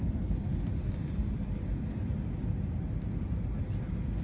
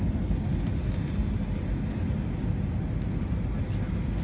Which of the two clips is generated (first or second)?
first